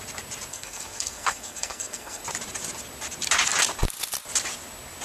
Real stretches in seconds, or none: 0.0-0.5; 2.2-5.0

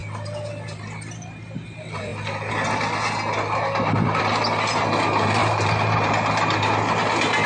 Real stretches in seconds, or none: 0.0-5.4; 6.1-7.5

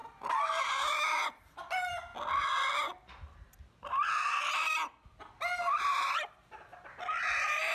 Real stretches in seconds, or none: 0.0-0.6; 2.1-5.8; 6.7-7.3